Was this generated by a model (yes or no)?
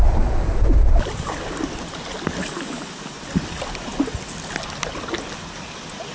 no